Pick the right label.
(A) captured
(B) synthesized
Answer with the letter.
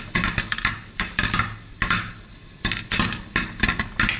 A